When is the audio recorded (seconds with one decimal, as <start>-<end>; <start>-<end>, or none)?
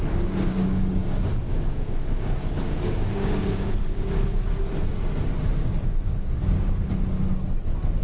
4.7-5.6; 6.9-8.0